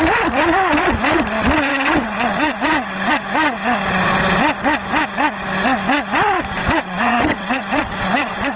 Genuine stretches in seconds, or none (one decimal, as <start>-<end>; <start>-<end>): 0.0-1.7; 3.1-6.6